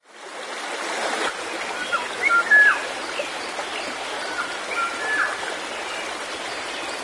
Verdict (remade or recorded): recorded